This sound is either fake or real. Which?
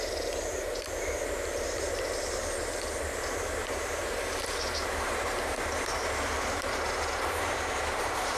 fake